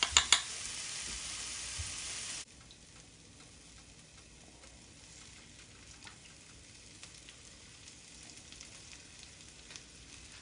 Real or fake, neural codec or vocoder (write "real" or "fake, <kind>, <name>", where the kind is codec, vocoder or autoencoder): real